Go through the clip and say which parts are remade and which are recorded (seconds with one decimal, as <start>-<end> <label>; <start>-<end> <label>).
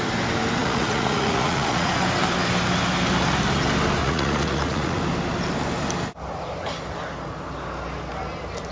0.0-0.6 recorded; 0.6-2.0 remade; 2.0-4.0 recorded; 4.0-5.0 remade; 5.0-8.7 recorded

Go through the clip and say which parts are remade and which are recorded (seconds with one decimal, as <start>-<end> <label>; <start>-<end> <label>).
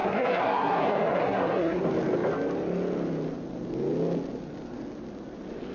0.0-1.8 remade; 1.8-5.7 recorded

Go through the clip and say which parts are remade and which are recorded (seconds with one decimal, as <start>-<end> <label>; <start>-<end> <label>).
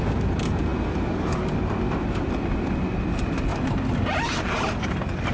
0.0-5.3 recorded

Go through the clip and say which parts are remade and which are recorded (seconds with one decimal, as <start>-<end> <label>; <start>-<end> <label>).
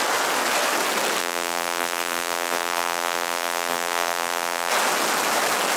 0.0-1.2 recorded; 1.2-4.7 remade; 4.7-5.8 recorded